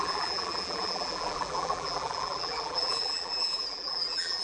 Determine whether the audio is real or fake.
fake